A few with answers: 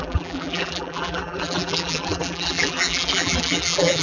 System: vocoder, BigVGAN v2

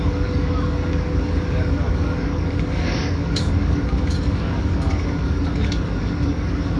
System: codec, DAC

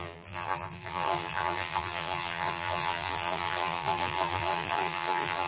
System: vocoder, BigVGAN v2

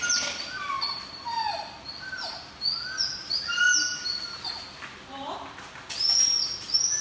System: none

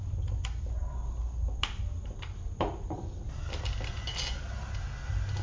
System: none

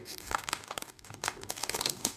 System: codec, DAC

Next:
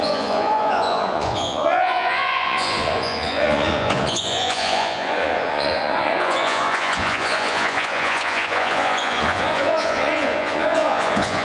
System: vocoder, Vocos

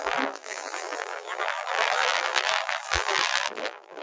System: vocoder, BigVGAN v2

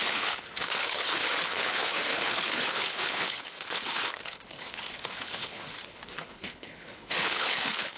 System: codec, HILCodec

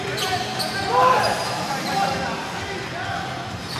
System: none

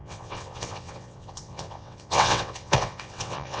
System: vocoder, WaveNeXt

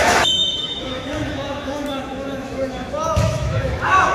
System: autoencoder, DAC-VAE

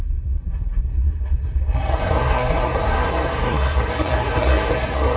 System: codec, SNAC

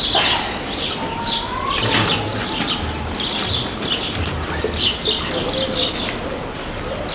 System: none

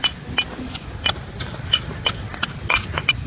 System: none